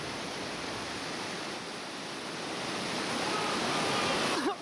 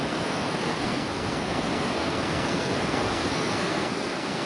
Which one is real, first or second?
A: first